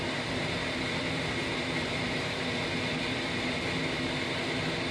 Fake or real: real